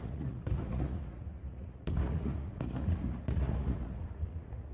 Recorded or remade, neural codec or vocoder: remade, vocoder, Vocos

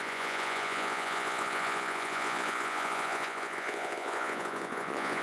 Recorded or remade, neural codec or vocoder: remade, vocoder, Vocos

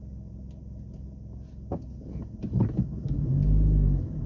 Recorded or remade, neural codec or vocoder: recorded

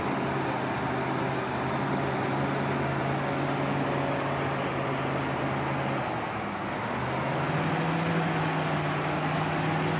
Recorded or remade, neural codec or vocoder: recorded